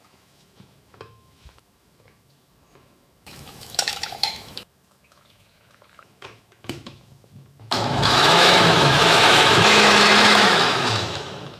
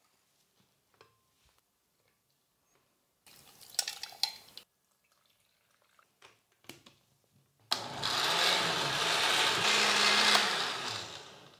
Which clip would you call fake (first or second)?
first